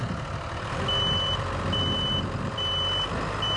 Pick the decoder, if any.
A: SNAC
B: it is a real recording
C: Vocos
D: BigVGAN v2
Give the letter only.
B